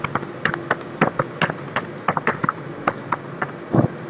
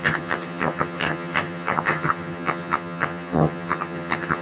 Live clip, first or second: first